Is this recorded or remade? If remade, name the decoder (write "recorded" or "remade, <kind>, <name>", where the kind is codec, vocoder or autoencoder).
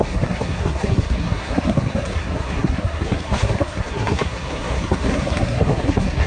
remade, codec, SNAC